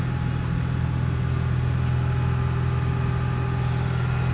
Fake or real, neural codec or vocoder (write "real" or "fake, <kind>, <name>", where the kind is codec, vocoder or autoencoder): real